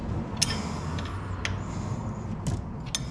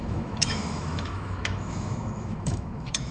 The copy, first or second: second